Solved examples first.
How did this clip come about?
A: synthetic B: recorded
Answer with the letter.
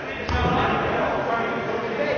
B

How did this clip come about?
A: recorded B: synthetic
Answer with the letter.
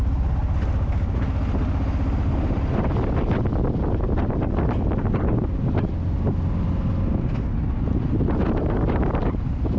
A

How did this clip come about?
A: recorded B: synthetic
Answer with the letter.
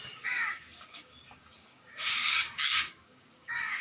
B